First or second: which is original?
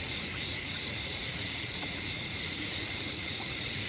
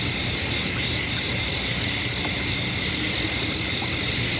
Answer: second